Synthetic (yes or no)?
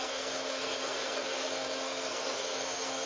yes